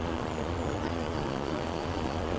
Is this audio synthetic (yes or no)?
yes